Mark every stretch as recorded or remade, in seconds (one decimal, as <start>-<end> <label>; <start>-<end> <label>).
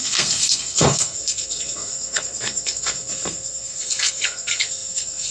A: 0.0-5.3 remade